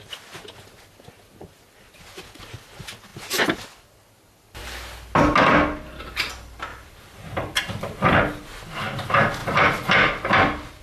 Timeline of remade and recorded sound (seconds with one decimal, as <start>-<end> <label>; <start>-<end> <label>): 0.0-6.7 recorded; 6.7-7.6 remade; 7.6-10.8 recorded